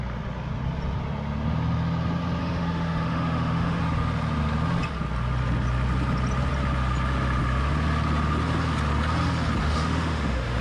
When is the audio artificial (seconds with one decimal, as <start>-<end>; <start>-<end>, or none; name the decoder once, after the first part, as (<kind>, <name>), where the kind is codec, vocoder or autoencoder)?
2.4-3.8 (autoencoder, DAC-VAE); 9.6-10.6